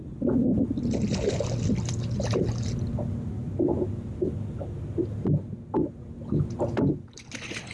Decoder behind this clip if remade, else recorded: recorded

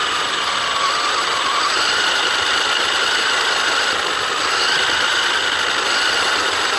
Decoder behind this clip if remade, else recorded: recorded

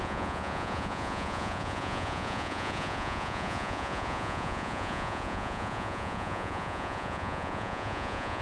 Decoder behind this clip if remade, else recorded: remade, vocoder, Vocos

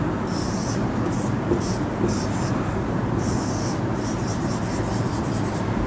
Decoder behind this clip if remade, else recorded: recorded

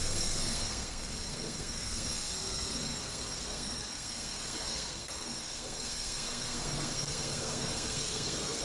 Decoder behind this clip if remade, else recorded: remade, codec, SNAC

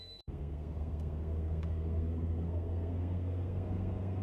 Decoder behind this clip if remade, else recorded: remade, codec, SNAC